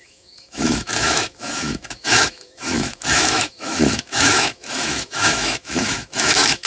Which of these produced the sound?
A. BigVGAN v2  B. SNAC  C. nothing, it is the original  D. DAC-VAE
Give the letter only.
D